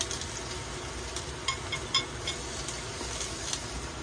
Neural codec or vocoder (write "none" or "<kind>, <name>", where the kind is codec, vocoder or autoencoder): none